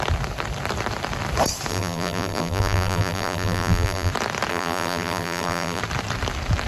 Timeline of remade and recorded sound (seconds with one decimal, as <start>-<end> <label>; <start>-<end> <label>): 0.0-1.7 recorded; 1.7-4.1 remade; 4.1-4.5 recorded; 4.5-5.8 remade; 5.8-6.7 recorded